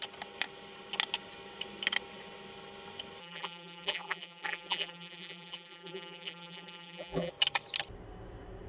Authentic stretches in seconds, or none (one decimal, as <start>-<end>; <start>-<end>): 0.0-3.2; 7.3-8.7